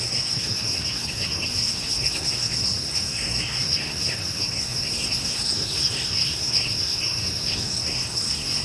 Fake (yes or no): yes